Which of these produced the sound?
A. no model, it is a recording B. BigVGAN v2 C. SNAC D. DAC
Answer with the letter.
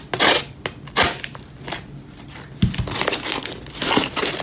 A